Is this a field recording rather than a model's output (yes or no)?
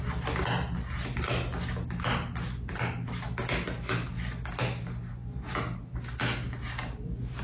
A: yes